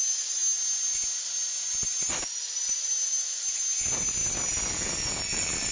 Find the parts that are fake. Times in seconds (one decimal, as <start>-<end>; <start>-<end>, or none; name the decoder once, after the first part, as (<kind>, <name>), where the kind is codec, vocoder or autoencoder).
none